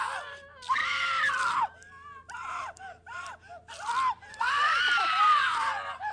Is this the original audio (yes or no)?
no